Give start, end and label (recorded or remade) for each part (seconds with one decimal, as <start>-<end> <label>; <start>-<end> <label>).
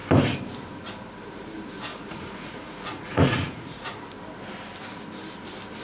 0.0-1.9 recorded; 1.9-4.0 remade; 4.0-5.8 recorded